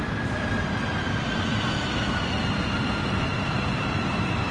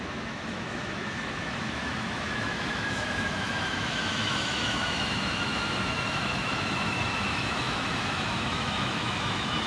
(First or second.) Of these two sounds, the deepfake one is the second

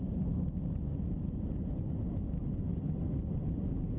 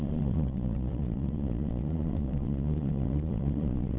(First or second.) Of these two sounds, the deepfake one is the second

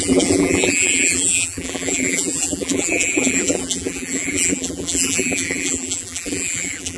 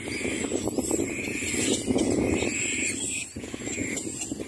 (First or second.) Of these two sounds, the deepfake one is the first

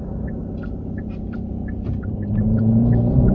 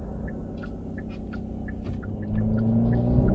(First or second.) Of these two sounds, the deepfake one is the first